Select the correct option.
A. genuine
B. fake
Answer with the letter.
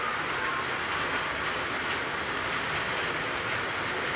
A